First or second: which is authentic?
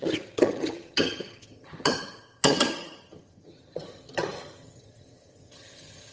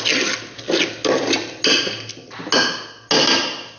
second